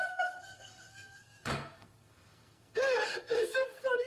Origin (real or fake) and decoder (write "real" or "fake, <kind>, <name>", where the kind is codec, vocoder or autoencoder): fake, codec, SNAC